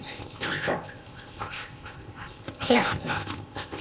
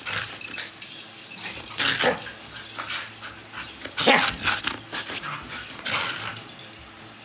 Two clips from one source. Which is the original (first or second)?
second